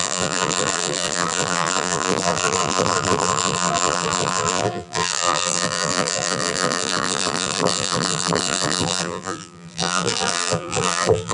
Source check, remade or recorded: remade